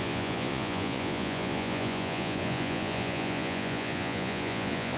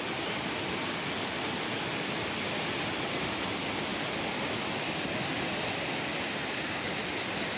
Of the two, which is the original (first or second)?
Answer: second